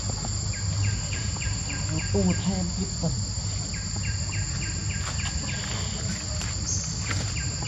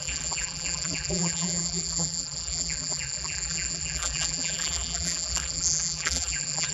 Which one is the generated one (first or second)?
second